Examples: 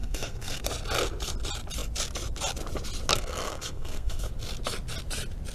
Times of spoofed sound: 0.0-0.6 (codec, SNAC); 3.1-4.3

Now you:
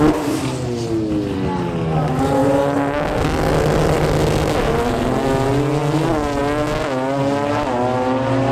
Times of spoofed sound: none

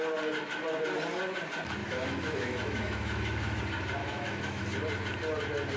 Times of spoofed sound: 1.8-3.6 (autoencoder, DAC-VAE); 4.0-4.6

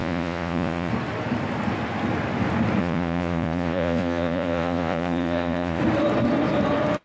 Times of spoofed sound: 0.0-0.9 (vocoder, Vocos); 2.8-5.8

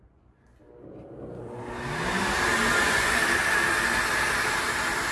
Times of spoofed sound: 0.0-0.6 (vocoder, Vocos); 2.8-3.2

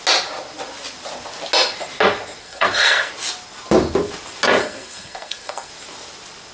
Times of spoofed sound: 2.4-3.1 (codec, SNAC); 4.6-5.7

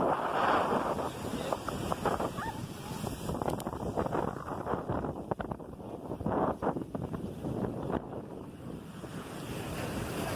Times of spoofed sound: 1.3-2.1 (vocoder, BigVGAN v2)